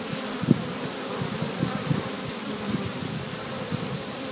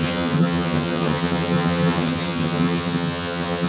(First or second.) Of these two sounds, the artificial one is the second